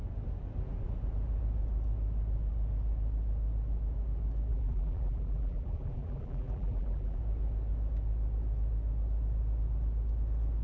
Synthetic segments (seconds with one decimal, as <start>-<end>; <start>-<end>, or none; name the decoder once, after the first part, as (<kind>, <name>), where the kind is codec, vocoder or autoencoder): 4.5-7.2 (vocoder, BigVGAN v2)